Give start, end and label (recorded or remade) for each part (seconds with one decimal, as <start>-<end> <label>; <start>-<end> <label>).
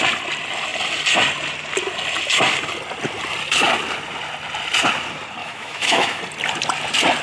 0.0-5.4 recorded; 5.4-6.2 remade; 6.2-7.2 recorded